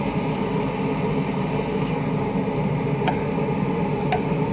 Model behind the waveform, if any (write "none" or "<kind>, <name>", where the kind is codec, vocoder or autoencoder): none